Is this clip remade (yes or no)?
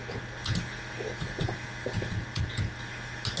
no